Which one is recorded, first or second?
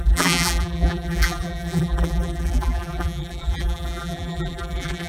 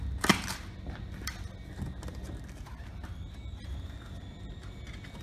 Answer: second